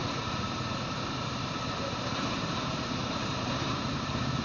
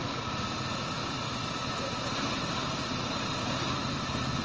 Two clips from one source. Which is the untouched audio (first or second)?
second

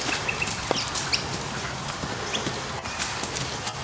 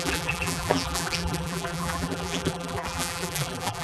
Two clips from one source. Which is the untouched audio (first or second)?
first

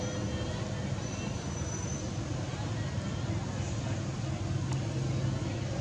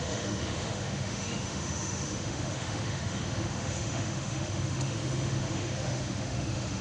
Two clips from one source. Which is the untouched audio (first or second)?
first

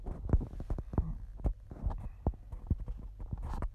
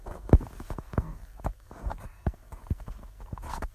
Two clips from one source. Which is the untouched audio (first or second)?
first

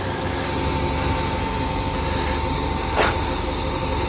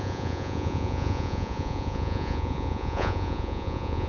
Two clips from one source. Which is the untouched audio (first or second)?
first